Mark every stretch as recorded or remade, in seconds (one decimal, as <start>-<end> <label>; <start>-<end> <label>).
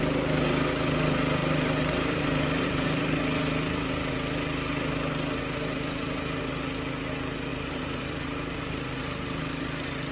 0.0-1.4 recorded; 1.4-3.2 remade; 3.2-7.5 recorded; 7.5-10.1 remade